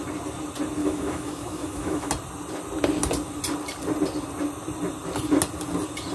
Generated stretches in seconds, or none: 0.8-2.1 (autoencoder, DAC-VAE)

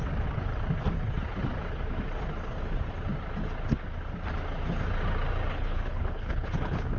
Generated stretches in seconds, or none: 5.5-7.0 (codec, HILCodec)

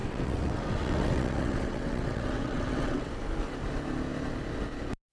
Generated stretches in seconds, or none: 0.0-3.1 (vocoder, WaveNeXt)

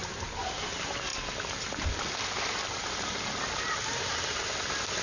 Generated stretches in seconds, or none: none

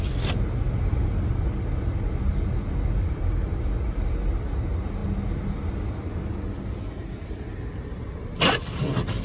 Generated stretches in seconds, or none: none

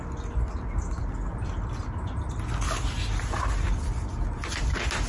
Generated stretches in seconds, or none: none

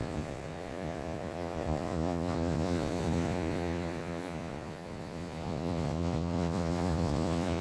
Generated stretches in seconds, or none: 0.0-7.6 (vocoder, Vocos)